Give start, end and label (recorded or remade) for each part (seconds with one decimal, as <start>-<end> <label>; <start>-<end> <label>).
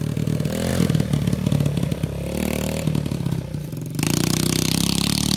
0.0-5.4 recorded